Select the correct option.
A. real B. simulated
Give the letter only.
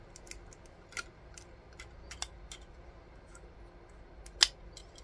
A